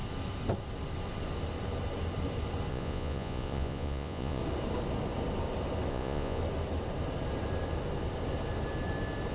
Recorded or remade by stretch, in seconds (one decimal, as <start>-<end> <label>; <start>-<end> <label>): 0.0-2.7 recorded; 2.7-4.4 remade; 4.4-5.9 recorded; 5.9-6.4 remade; 6.4-9.3 recorded